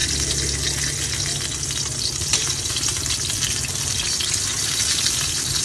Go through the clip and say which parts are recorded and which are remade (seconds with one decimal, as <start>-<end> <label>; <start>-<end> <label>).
0.0-5.6 recorded